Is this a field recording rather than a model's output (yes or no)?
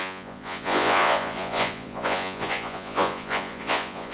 no